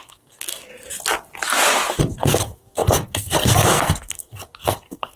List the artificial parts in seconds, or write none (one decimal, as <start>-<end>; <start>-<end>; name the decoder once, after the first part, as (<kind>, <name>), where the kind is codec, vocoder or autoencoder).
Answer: 0.0-0.7 (codec, SNAC); 2.0-5.2